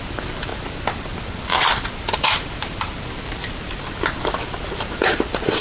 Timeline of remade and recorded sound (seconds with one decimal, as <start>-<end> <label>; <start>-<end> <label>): 0.0-0.5 remade; 0.5-2.2 recorded; 2.2-5.6 remade